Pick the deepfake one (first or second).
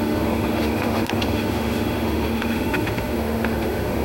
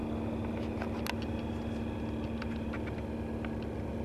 first